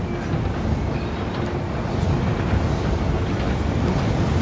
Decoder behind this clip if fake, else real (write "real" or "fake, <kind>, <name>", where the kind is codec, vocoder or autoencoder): real